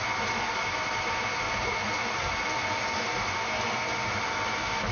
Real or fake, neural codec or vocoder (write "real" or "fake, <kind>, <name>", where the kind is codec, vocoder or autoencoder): real